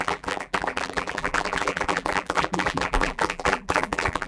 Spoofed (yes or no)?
yes